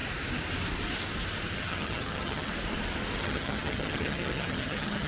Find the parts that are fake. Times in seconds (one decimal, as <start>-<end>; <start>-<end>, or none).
1.5-2.5; 3.2-5.1